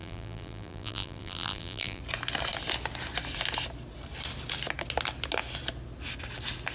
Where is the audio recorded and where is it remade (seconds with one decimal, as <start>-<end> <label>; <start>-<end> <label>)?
0.0-2.0 remade; 2.0-6.7 recorded